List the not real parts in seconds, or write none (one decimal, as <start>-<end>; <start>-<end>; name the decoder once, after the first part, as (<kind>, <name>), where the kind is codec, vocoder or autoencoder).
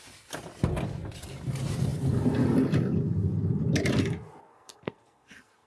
4.4-5.7 (codec, SNAC)